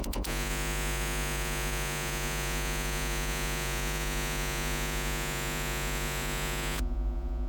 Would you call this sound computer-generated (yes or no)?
yes